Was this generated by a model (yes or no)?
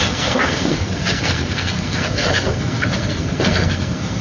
yes